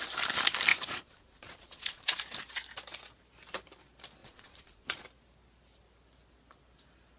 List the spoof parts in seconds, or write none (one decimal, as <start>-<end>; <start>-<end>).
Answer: 0.7-2.2; 4.2-5.0